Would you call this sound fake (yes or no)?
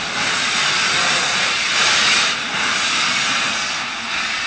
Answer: no